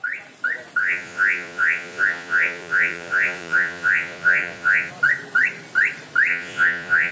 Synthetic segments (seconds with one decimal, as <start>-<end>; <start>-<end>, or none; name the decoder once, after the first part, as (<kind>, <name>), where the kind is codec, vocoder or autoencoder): 0.8-4.9 (vocoder, Vocos); 6.3-7.1